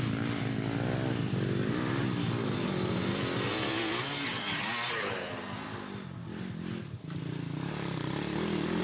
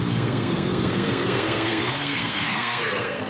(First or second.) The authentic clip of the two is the first